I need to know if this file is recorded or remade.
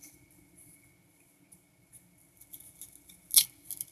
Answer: recorded